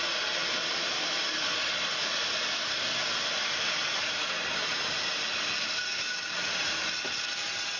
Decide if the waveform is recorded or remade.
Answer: recorded